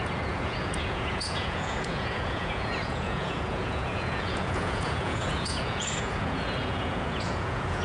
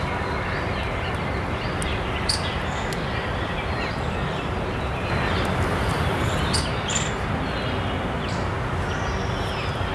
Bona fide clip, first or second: second